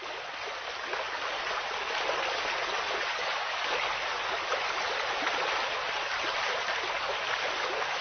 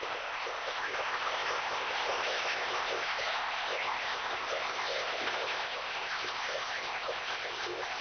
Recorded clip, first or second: first